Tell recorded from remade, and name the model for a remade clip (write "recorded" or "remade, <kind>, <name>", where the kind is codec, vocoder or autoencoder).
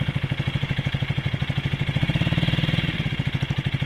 recorded